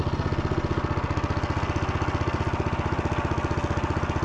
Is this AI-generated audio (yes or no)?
no